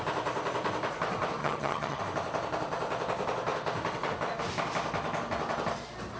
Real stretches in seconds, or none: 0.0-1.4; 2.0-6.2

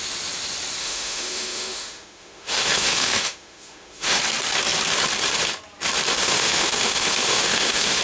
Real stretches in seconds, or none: 0.0-0.8; 4.2-6.2

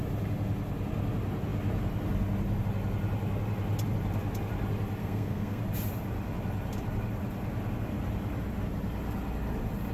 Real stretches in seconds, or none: 0.0-5.0; 5.6-9.9

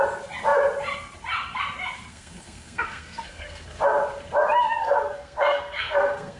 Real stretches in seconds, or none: 0.0-2.1; 3.8-4.8